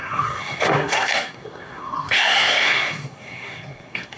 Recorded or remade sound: remade